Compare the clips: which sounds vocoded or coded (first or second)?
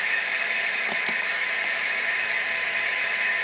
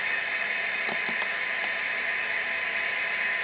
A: first